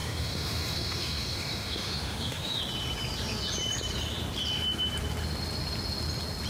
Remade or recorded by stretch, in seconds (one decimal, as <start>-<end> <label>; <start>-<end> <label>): 0.0-2.6 remade; 2.6-6.5 recorded